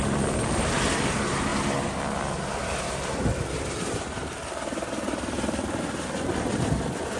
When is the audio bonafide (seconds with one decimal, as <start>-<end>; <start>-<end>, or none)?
0.0-7.2